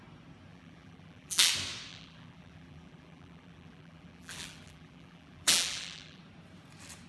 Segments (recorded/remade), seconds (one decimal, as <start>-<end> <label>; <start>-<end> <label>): 0.0-0.5 recorded; 0.5-1.5 remade; 1.5-1.9 recorded; 1.9-6.2 remade; 6.2-7.1 recorded